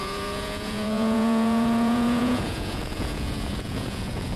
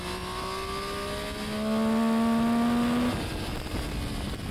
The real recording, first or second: second